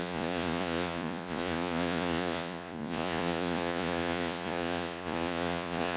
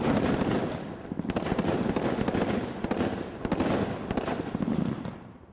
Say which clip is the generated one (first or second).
first